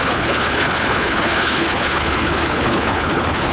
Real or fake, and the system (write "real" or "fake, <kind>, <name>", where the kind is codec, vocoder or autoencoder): fake, codec, HILCodec